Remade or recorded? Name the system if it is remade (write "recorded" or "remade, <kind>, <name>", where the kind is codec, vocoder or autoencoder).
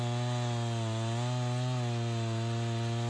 recorded